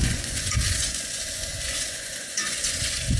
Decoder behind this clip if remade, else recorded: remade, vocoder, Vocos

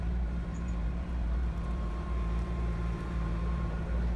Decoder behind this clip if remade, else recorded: remade, vocoder, BigVGAN v2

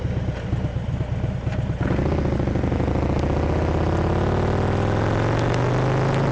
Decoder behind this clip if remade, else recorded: recorded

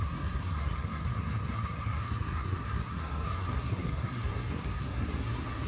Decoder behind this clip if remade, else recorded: remade, codec, SNAC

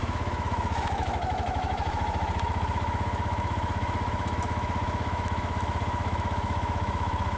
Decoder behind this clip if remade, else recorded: remade, autoencoder, DAC-VAE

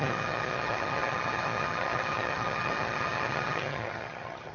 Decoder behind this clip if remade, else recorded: remade, vocoder, HiFi-GAN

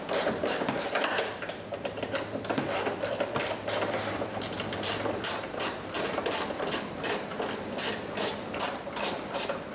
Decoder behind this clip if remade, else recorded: remade, vocoder, BigVGAN v2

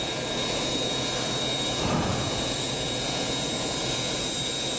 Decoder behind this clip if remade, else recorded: remade, vocoder, Vocos